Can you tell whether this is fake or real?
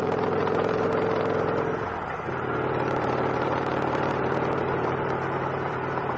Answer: fake